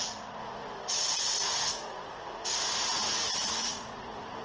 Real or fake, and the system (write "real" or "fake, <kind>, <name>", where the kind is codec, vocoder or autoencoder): fake, vocoder, Vocos